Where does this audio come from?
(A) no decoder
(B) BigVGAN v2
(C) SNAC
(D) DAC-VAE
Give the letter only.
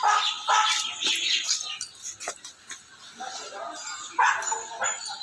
A